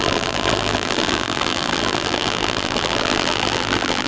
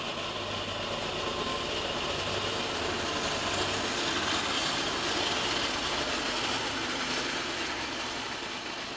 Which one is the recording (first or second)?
second